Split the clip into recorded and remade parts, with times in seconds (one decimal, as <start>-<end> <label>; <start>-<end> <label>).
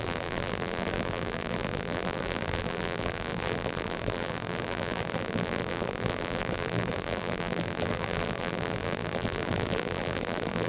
0.0-10.7 remade